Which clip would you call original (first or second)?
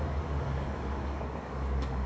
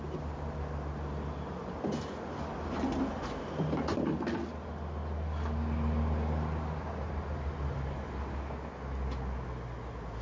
second